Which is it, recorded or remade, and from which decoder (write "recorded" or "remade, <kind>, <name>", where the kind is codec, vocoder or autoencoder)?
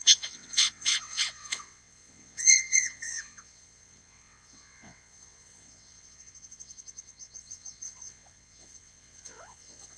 remade, vocoder, WaveNeXt